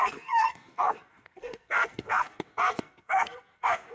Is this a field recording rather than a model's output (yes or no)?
no